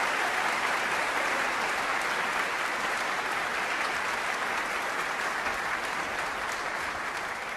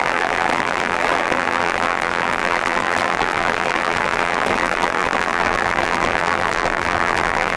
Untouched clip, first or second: first